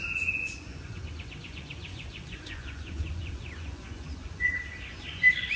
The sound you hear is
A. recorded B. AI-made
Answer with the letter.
B